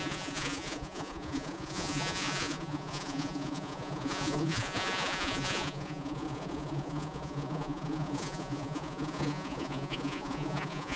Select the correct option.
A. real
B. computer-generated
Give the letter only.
B